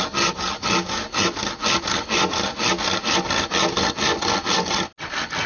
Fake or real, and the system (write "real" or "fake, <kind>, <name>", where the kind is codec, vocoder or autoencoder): real